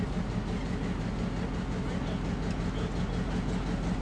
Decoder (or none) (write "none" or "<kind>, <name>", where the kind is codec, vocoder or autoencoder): none